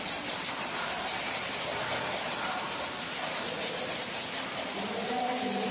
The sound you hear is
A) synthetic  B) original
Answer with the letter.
B